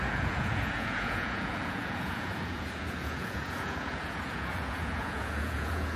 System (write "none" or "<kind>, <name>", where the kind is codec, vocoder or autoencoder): vocoder, Vocos